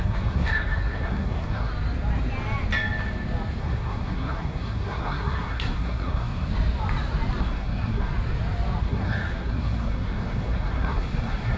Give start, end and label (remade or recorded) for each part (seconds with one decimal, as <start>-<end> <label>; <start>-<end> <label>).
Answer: 0.0-1.7 remade; 1.7-3.6 recorded; 3.6-6.5 remade; 6.5-7.4 recorded; 7.4-8.1 remade; 8.1-8.8 recorded; 8.8-11.6 remade